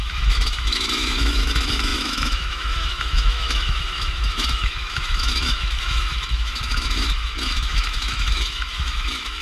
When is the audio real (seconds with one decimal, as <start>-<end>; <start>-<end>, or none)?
none